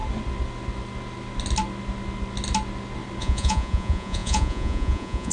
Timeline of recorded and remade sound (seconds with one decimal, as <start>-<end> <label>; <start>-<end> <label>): 0.0-3.2 recorded; 3.2-5.3 remade